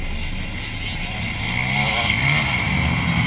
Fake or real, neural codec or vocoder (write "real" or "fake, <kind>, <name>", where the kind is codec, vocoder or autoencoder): real